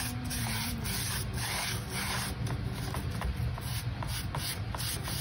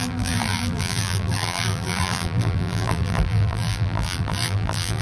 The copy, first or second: second